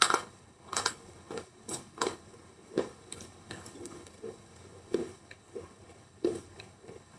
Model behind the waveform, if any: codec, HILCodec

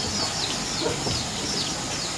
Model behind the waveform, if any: none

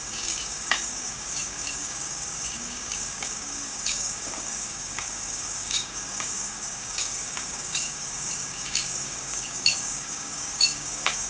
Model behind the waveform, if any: codec, DAC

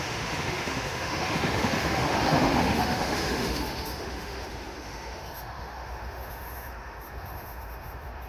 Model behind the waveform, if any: autoencoder, DAC-VAE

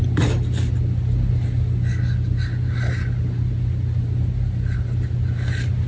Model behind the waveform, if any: none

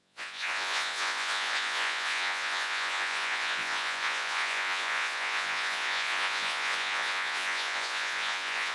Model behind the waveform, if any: vocoder, Vocos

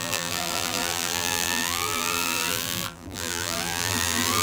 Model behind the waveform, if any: vocoder, BigVGAN v2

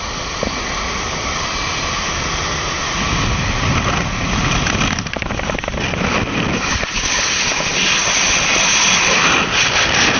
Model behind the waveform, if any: none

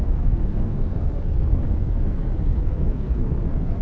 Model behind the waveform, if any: codec, SNAC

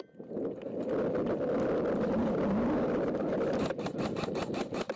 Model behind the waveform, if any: none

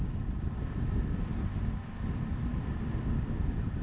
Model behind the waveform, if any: none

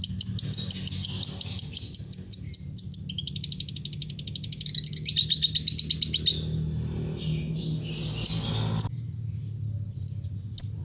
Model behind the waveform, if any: none